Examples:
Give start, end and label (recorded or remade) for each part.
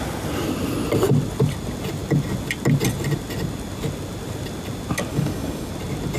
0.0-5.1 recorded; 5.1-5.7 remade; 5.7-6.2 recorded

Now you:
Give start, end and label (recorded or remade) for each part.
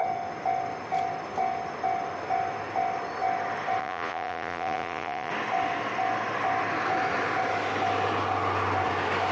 0.0-3.8 recorded; 3.8-5.3 remade; 5.3-9.3 recorded